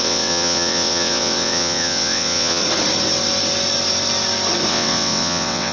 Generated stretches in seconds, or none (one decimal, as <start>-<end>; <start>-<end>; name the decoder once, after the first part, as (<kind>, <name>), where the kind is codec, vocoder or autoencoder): 0.0-2.6 (vocoder, WaveNeXt); 4.7-5.7